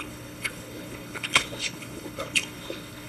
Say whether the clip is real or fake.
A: fake